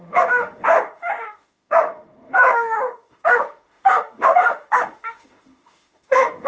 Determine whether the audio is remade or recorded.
remade